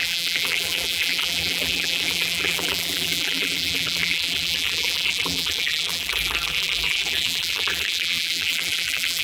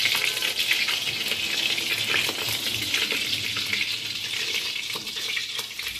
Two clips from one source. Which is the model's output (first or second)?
first